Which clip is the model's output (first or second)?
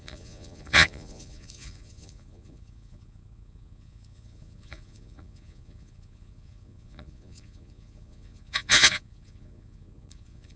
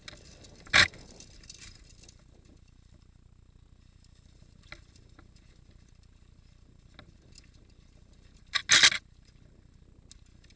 first